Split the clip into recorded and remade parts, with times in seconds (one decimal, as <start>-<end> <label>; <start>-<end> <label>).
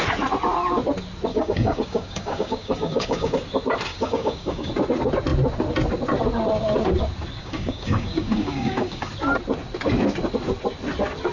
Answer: 0.0-1.3 recorded; 1.3-3.3 remade; 3.3-3.9 recorded; 3.9-4.7 remade; 4.7-7.4 recorded; 7.4-9.1 remade; 9.1-11.3 recorded